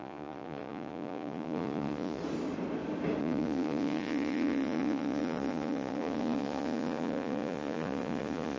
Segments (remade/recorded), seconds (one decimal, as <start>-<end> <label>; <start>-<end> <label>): 0.0-2.2 remade; 2.2-3.2 recorded; 3.2-8.6 remade